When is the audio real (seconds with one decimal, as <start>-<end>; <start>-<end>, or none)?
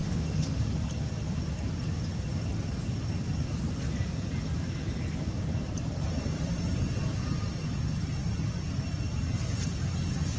0.6-10.4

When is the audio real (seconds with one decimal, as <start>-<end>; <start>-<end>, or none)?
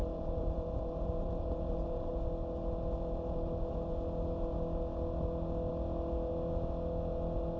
2.1-7.6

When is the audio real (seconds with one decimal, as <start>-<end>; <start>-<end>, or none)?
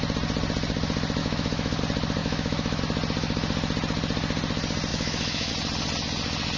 0.0-1.2; 1.8-2.2; 2.8-4.9; 5.5-6.6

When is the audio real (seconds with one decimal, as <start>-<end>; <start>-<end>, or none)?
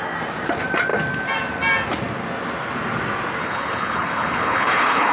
0.0-3.4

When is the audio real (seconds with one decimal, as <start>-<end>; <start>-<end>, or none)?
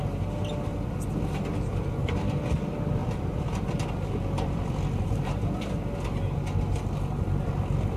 0.0-0.7; 1.4-3.0; 5.7-8.0